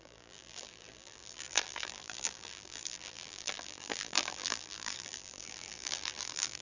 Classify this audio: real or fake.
fake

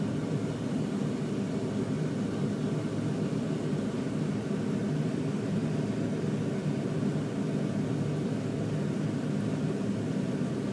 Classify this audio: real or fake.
real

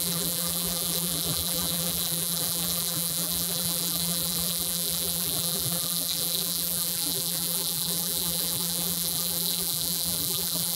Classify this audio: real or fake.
fake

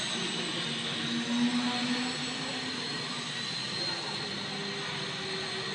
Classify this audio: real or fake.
real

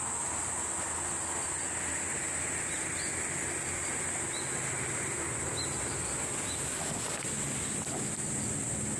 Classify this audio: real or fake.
real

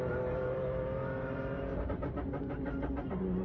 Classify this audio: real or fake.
fake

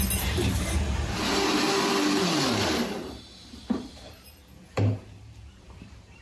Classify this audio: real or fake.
fake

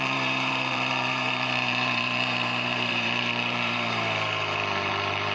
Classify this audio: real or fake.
fake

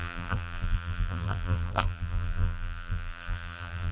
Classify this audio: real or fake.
fake